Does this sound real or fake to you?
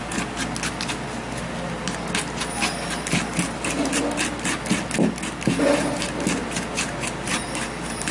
real